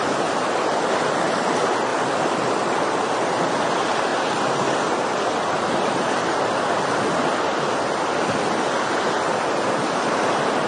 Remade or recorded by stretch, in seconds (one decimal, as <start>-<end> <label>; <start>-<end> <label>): 0.0-10.7 recorded